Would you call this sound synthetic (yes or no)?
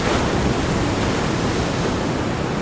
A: no